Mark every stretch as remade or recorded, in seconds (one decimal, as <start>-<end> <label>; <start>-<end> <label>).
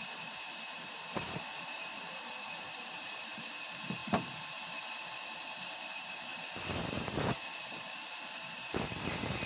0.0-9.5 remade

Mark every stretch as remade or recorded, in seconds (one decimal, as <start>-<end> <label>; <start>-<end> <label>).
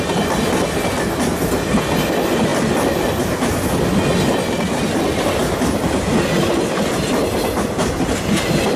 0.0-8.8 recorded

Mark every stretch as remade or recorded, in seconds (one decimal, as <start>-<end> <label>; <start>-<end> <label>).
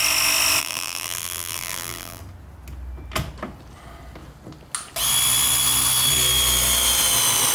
0.0-0.6 recorded; 0.6-2.2 remade; 2.2-7.5 recorded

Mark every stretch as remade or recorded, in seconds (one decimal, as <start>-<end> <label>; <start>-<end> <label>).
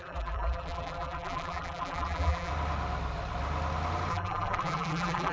0.0-2.5 remade; 2.5-4.1 recorded; 4.1-5.3 remade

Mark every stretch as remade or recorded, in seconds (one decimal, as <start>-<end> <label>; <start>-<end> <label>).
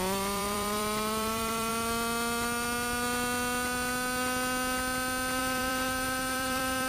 0.0-1.7 remade; 1.7-5.4 recorded; 5.4-6.9 remade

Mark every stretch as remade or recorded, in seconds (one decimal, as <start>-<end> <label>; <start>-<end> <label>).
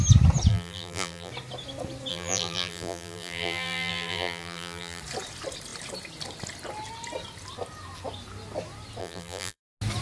0.0-0.5 recorded; 0.5-1.3 remade; 1.3-2.1 recorded; 2.1-5.0 remade; 5.0-9.0 recorded; 9.0-9.6 remade; 9.6-10.0 recorded